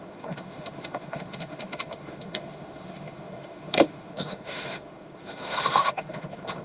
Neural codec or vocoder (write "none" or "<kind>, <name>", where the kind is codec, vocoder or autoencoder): autoencoder, DAC-VAE